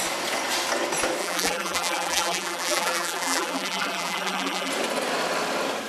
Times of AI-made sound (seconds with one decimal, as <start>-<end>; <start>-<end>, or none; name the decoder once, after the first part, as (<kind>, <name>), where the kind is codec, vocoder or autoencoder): 1.2-4.7 (vocoder, BigVGAN v2)